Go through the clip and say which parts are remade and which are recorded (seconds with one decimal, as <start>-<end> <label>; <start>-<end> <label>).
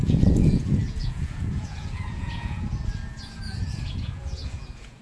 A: 0.0-5.0 remade